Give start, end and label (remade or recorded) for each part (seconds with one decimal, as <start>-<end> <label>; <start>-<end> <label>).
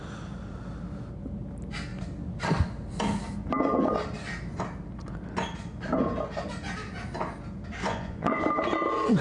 0.0-7.8 recorded; 7.8-8.4 remade; 8.4-9.2 recorded